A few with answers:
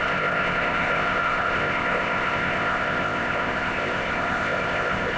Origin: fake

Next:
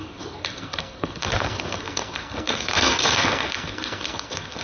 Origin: fake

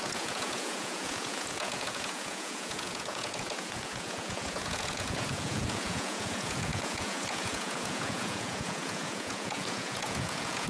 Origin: fake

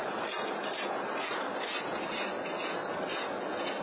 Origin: real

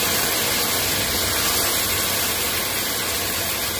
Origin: real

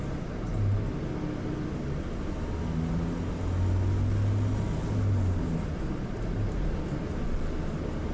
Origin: real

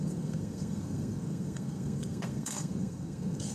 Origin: fake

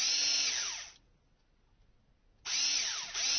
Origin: real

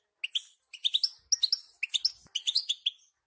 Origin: real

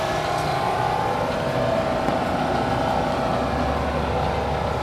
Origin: real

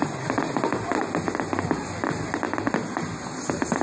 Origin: real